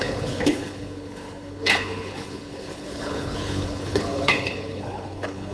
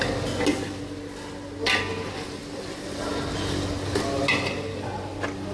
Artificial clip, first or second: first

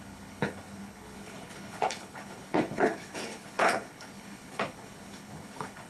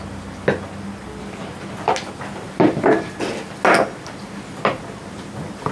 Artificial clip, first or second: first